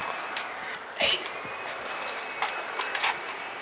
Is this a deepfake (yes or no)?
no